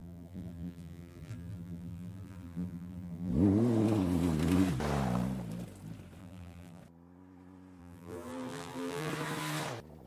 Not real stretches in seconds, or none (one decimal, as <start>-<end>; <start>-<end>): 0.0-3.3; 6.2-6.8; 7.8-9.1